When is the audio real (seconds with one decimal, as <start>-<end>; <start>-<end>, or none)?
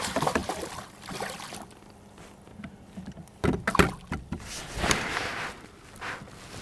0.0-6.6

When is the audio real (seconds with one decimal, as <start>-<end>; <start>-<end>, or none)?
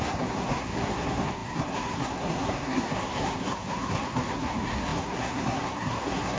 none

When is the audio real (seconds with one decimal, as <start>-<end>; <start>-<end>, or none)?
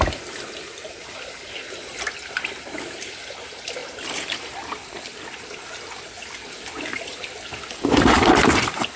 0.0-3.8